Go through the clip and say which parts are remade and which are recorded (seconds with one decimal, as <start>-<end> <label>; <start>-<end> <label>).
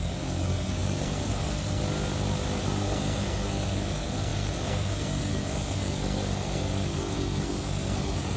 0.0-1.8 remade; 1.8-2.6 recorded; 2.6-8.4 remade